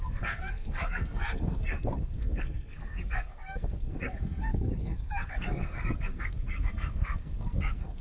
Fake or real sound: fake